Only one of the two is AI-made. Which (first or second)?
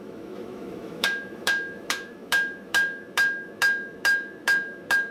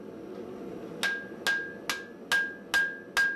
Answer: first